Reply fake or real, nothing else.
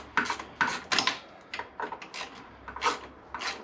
real